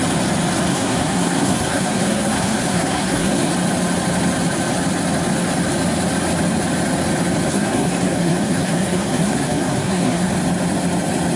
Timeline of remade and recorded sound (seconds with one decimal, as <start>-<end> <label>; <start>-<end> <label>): 0.0-0.7 recorded; 0.7-3.5 remade; 3.5-7.5 recorded; 7.5-10.3 remade; 10.3-11.4 recorded